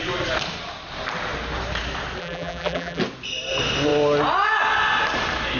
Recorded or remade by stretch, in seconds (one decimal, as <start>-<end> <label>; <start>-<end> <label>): 0.0-2.2 recorded; 2.2-3.0 remade; 3.0-5.6 recorded

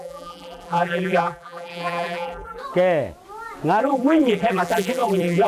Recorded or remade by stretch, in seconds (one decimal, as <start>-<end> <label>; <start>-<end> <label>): 0.0-2.6 remade; 2.6-3.8 recorded; 3.8-5.5 remade

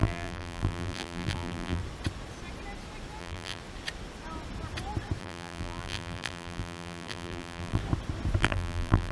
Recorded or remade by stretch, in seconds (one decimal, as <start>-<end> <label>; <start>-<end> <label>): 0.0-1.8 remade; 1.8-3.2 recorded; 3.2-3.6 remade; 3.6-5.2 recorded; 5.2-7.8 remade; 7.8-8.4 recorded; 8.4-9.1 remade

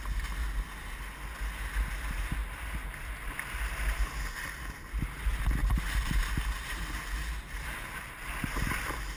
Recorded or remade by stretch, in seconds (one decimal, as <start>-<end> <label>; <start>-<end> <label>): 0.0-5.6 recorded; 5.6-6.2 remade; 6.2-9.2 recorded